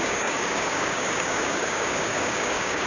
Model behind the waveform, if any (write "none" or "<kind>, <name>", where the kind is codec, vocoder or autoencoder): codec, DAC